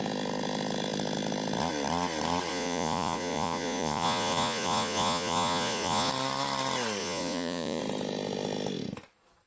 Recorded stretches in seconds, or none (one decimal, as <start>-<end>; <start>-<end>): 0.0-2.5; 6.1-7.0; 7.8-9.5